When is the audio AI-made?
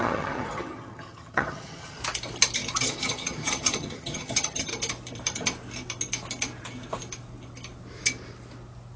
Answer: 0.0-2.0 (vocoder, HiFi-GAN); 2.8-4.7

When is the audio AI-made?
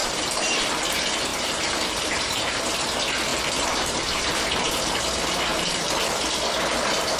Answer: 0.0-0.7 (vocoder, BigVGAN v2); 1.3-2.6; 3.3-5.0; 5.5-6.2